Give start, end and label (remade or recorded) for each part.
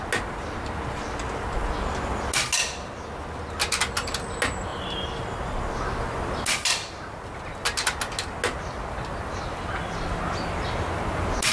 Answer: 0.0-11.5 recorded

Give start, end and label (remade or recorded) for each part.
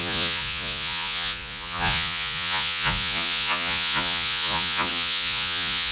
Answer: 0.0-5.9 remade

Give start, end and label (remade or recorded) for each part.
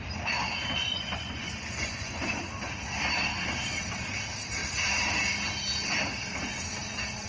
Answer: 0.0-0.8 recorded; 0.8-2.4 remade; 2.4-7.3 recorded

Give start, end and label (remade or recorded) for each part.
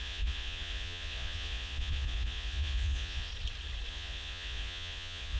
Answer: 0.0-3.3 remade; 3.3-3.9 recorded; 3.9-5.4 remade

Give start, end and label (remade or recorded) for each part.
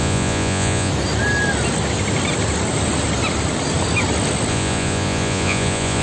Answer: 0.0-0.9 remade; 0.9-4.5 recorded; 4.5-6.0 remade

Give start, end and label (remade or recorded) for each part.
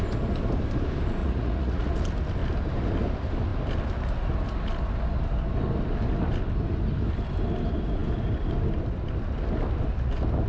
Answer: 0.0-1.2 recorded; 1.2-1.9 remade; 1.9-10.5 recorded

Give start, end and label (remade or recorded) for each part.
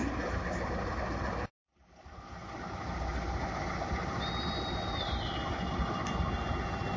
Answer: 0.0-7.0 recorded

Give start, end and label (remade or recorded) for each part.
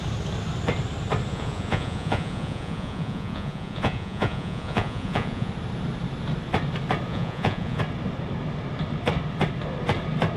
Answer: 0.0-1.3 recorded; 1.3-5.5 remade; 5.5-7.1 recorded; 7.1-7.8 remade; 7.8-10.4 recorded